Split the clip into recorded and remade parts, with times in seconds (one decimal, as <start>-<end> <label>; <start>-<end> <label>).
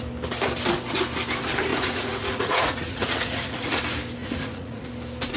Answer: 0.0-1.7 recorded; 1.7-3.8 remade; 3.8-4.2 recorded; 4.2-4.9 remade; 4.9-5.4 recorded